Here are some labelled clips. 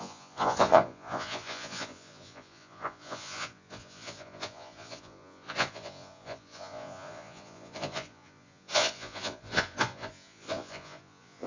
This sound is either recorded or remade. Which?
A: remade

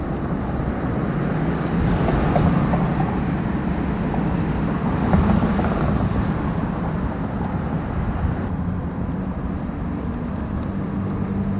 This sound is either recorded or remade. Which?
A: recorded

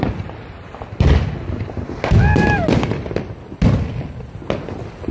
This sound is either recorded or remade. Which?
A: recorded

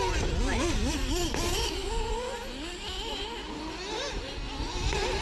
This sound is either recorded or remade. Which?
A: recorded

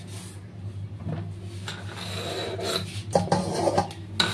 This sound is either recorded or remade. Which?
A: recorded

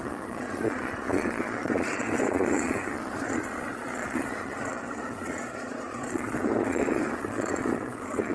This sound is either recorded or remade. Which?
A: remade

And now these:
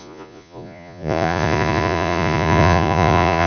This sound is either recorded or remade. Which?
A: remade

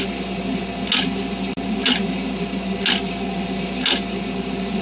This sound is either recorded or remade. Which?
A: recorded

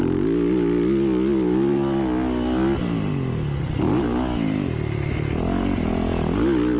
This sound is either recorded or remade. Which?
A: recorded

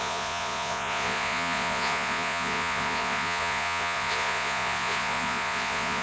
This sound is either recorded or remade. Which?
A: remade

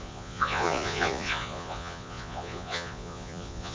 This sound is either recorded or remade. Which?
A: remade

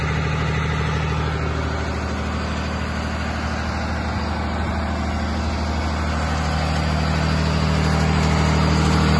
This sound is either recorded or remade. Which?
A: recorded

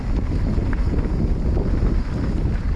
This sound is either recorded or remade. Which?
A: recorded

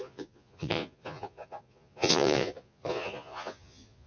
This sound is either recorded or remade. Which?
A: remade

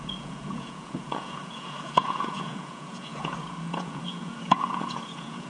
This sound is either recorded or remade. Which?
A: remade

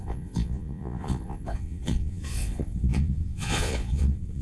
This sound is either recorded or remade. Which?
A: remade